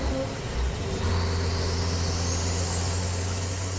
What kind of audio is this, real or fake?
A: real